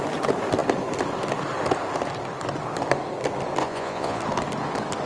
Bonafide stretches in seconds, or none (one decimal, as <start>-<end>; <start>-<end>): 0.0-3.6; 4.2-5.1